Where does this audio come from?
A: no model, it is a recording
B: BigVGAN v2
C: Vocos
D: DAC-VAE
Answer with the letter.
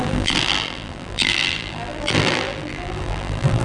B